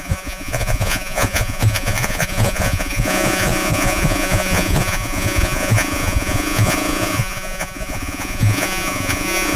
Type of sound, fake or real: fake